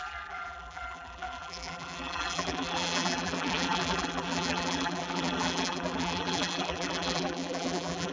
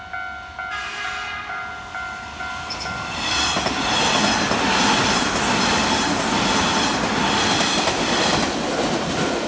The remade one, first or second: first